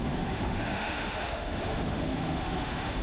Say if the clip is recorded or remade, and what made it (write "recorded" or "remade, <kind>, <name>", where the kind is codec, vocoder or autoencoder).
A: remade, autoencoder, DAC-VAE